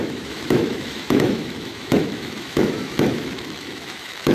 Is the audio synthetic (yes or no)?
yes